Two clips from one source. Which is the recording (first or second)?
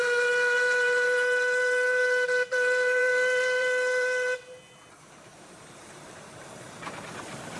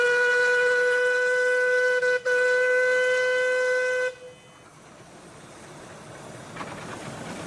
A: second